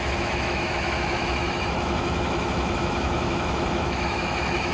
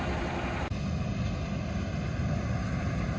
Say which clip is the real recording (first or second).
second